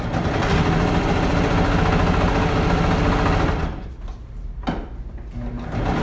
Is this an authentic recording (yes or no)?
yes